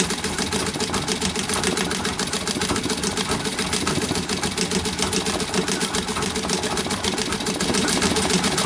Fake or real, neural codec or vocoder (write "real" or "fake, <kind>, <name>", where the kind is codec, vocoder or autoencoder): real